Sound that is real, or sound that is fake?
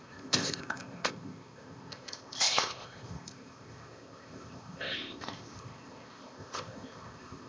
fake